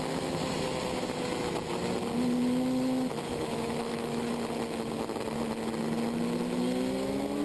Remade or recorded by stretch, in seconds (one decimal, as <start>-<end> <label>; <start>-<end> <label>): 0.0-3.3 recorded; 3.3-4.3 remade; 4.3-7.4 recorded